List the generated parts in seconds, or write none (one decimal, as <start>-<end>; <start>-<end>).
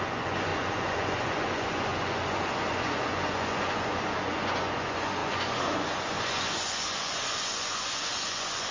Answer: 0.0-8.7